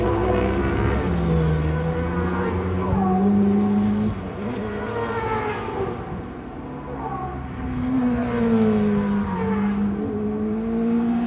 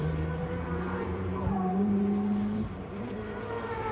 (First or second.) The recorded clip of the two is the first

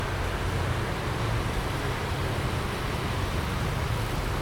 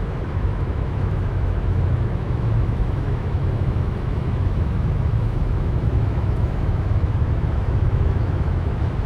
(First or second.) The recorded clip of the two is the first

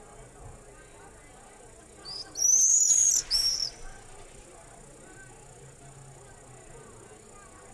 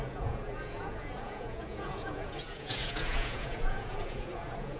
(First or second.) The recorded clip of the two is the first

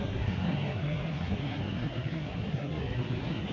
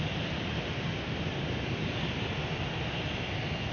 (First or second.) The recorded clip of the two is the second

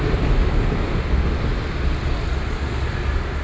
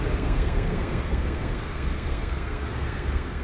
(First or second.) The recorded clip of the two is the first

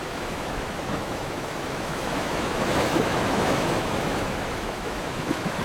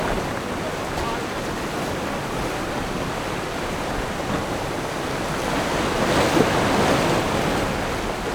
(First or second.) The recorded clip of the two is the second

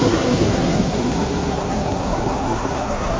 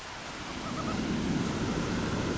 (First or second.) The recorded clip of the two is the second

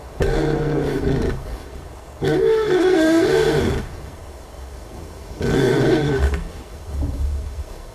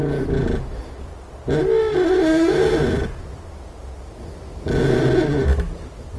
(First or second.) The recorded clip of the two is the second